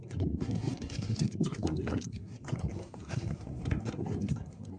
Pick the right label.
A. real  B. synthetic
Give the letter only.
B